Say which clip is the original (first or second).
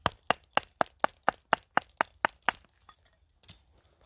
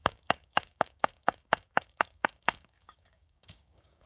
first